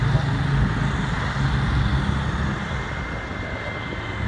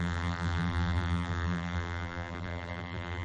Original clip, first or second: first